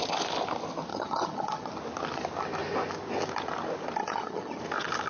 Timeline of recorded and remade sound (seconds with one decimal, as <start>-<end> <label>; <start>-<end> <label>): 0.0-0.9 recorded; 0.9-1.7 remade; 1.7-4.0 recorded; 4.0-4.6 remade; 4.6-5.1 recorded